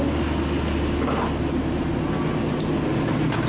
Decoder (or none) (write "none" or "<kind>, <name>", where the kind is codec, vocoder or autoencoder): none